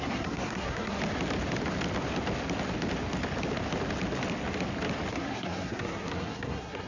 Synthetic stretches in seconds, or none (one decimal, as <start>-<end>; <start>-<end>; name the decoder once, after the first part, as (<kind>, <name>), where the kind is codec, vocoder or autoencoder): 0.0-1.0 (codec, SNAC); 5.1-6.9